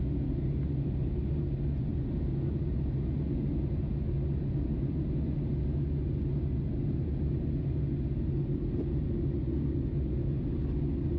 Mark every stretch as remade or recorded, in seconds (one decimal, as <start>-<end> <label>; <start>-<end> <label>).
0.0-11.2 recorded